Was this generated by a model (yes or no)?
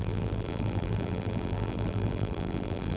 yes